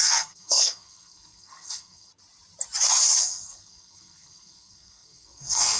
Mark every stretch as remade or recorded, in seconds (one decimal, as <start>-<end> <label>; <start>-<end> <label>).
0.0-2.1 remade; 2.1-3.2 recorded; 3.2-5.8 remade